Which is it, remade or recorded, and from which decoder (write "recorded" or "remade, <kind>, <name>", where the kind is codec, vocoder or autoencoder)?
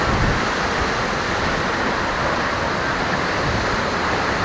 recorded